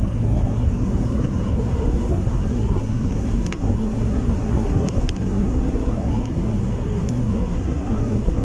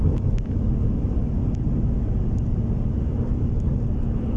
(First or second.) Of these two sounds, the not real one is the first